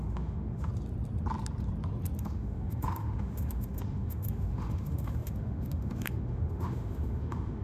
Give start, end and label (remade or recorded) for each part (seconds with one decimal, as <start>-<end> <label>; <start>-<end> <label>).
0.0-0.7 remade; 0.7-2.2 recorded; 2.2-7.6 remade